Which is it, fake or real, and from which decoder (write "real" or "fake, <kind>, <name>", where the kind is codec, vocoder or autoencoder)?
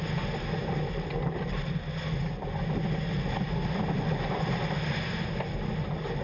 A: real